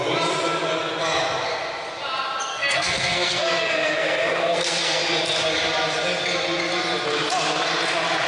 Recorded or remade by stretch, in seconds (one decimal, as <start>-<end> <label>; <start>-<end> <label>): 0.0-2.5 recorded; 2.5-5.0 remade; 5.0-8.3 recorded